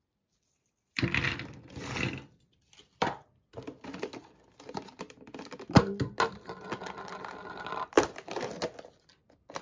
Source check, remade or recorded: recorded